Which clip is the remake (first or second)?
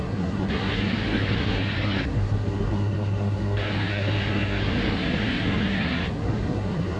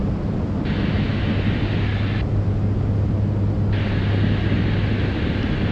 first